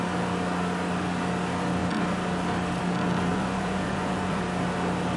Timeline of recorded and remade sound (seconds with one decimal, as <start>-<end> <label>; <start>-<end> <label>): 0.0-3.3 recorded; 3.3-4.4 remade; 4.4-5.2 recorded